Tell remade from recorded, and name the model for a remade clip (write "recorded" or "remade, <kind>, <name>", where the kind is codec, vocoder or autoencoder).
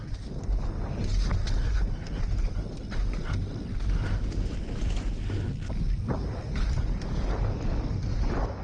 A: recorded